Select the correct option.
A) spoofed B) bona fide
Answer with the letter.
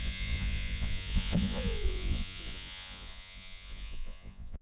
A